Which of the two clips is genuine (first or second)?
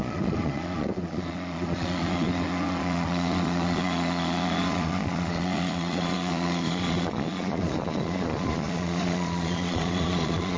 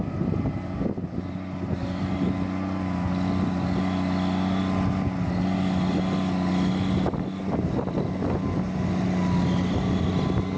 second